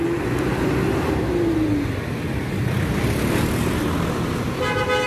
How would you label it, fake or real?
real